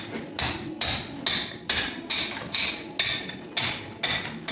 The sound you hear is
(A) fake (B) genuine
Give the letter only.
B